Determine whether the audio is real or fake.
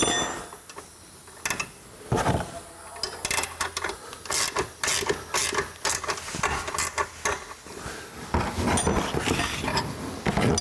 real